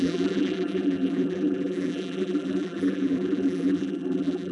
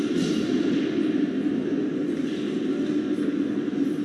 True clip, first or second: second